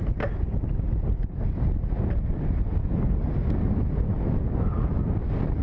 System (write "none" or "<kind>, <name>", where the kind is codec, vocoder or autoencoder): none